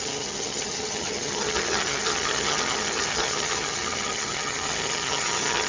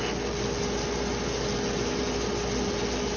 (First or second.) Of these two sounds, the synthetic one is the first